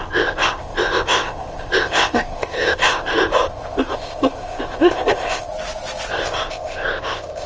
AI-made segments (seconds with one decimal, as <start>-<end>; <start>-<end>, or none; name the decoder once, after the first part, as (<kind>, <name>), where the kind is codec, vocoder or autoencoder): 0.0-5.5 (codec, ZipCodec); 6.1-7.5